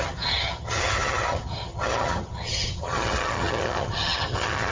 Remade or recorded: remade